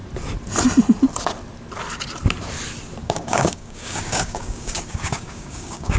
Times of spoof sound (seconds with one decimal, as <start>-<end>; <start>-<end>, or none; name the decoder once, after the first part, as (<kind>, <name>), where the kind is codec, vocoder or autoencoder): 3.0-6.0 (codec, DAC)